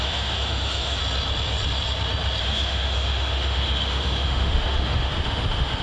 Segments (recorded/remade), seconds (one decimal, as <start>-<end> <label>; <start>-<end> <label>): 0.0-1.0 remade; 1.0-2.4 recorded; 2.4-5.8 remade